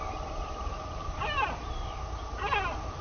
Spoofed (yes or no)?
no